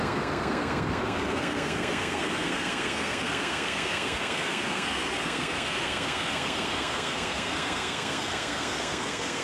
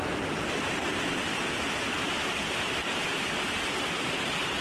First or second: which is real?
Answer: second